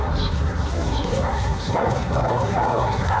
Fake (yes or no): yes